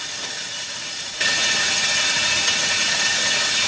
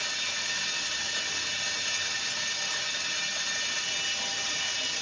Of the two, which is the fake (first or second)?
first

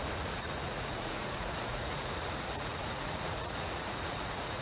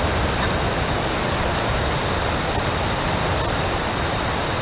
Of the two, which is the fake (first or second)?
first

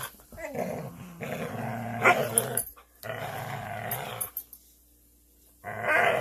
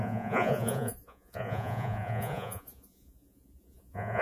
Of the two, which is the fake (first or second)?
second